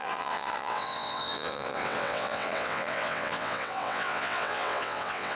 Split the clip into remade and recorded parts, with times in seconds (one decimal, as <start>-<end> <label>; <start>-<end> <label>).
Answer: 0.0-5.4 remade